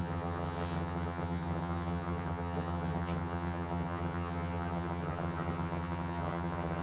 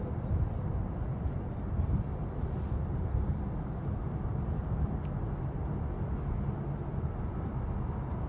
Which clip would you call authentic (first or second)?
second